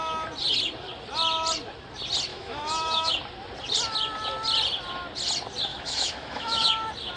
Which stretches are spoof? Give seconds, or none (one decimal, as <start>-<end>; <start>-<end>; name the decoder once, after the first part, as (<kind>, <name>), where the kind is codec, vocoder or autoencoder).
2.3-3.1 (autoencoder, DAC-VAE); 5.7-6.7